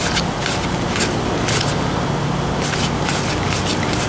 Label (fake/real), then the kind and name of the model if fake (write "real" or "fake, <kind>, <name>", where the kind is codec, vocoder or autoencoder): real